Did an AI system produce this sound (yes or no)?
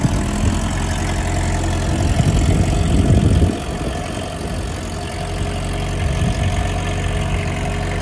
no